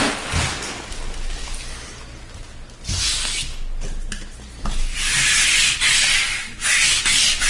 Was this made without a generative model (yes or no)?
yes